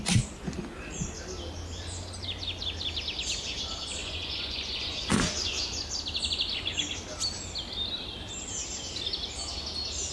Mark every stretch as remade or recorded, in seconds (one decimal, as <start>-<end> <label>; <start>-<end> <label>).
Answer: 0.0-4.0 recorded; 4.0-5.8 remade; 5.8-10.1 recorded